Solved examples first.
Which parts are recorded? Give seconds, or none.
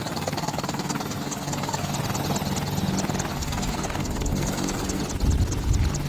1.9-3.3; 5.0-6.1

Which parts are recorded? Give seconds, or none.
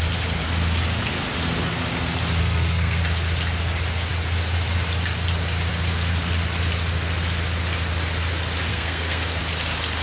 0.0-2.4; 3.0-8.7; 9.4-10.0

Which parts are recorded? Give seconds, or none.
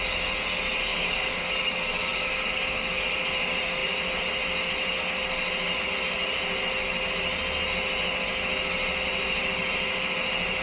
0.0-0.9; 3.0-10.6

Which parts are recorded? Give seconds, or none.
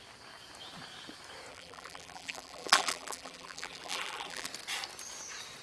0.0-1.5; 4.5-5.6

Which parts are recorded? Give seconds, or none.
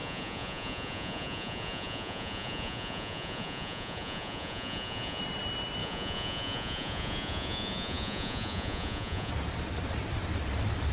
5.2-5.8; 9.3-10.9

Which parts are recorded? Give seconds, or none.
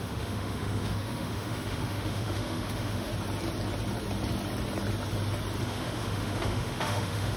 3.1-5.6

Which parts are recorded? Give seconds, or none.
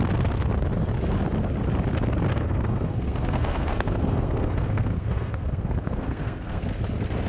0.0-2.3; 6.7-7.3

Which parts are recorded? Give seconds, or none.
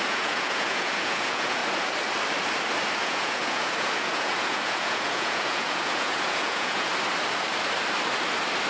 1.6-3.0; 6.9-8.7